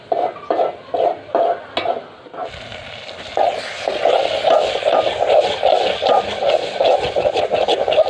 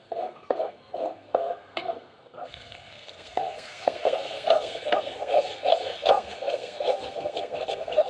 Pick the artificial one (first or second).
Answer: second